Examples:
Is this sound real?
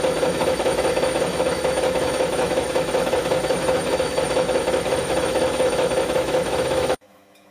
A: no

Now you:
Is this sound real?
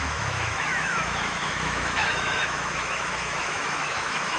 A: no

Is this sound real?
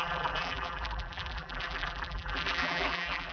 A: no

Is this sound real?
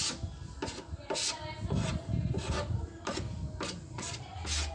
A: yes